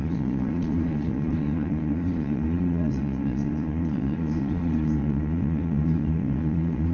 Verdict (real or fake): fake